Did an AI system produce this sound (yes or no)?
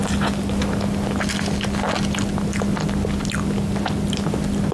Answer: no